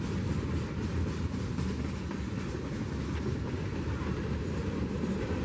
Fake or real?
real